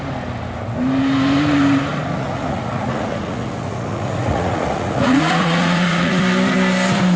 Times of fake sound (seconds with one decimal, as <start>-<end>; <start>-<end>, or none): 1.9-6.2